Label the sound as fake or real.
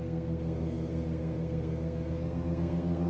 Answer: fake